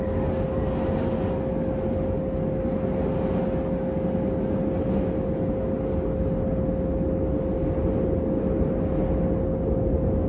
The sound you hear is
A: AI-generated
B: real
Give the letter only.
B